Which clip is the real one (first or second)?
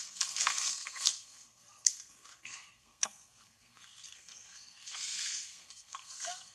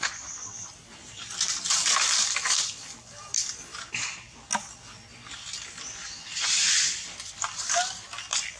second